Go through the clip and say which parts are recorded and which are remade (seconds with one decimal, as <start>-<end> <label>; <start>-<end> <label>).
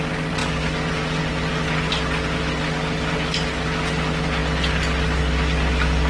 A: 0.0-6.1 recorded